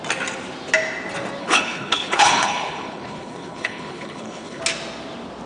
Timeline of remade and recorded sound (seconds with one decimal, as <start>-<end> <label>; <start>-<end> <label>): 0.0-1.4 recorded; 1.4-4.6 remade; 4.6-5.5 recorded

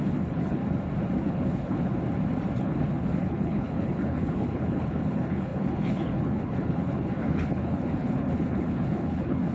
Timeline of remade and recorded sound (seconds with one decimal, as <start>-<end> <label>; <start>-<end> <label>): 0.0-0.6 remade; 0.6-1.2 recorded; 1.2-1.9 remade; 1.9-2.6 recorded; 2.6-9.5 remade